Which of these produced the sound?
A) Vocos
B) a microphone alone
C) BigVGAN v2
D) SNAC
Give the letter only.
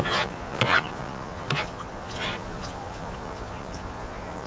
A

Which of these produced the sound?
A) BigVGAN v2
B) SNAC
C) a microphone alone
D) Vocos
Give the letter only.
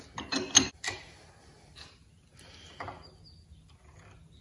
C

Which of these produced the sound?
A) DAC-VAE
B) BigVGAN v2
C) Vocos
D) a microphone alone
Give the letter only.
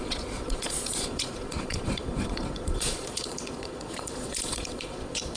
C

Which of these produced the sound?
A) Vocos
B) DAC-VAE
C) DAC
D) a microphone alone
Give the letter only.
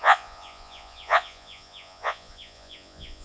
A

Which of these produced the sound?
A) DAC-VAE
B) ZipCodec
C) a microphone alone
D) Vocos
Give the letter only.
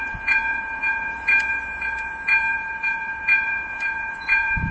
D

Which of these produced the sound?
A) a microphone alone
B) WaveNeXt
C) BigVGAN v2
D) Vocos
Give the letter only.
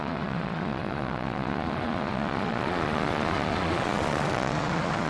D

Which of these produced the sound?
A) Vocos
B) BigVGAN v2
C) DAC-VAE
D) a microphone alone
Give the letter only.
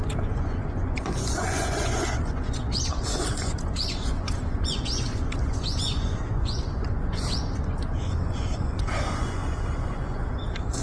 A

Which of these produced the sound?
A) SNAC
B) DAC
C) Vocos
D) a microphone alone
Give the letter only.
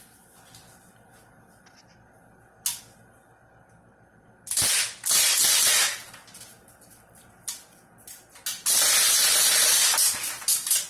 D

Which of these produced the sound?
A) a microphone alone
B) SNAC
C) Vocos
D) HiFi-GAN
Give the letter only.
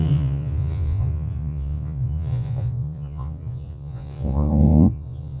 C